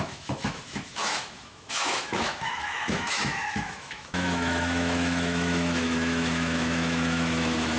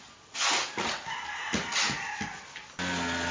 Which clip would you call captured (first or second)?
second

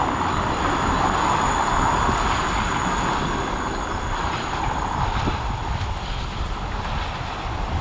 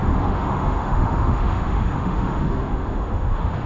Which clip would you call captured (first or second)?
first